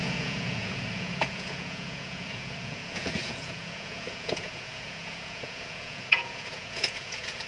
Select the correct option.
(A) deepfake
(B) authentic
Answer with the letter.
A